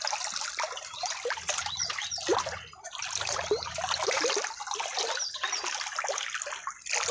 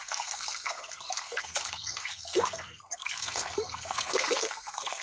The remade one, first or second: second